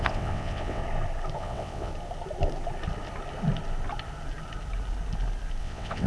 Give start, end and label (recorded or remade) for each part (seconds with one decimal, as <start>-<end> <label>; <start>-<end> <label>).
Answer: 0.0-0.8 remade; 0.8-1.4 recorded; 1.4-1.9 remade; 1.9-5.6 recorded; 5.6-6.1 remade